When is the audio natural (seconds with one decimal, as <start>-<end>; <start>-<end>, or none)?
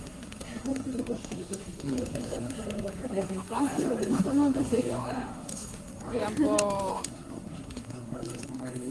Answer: 6.2-6.9